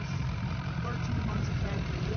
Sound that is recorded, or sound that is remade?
remade